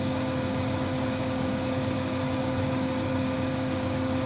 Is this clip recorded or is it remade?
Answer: remade